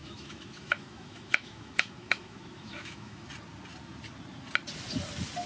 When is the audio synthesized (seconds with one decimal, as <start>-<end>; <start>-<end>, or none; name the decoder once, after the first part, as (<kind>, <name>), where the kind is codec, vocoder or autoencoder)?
0.0-3.3 (autoencoder, DAC-VAE)